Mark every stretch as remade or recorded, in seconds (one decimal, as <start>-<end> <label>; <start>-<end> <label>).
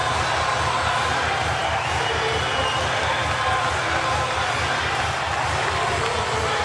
0.0-6.6 recorded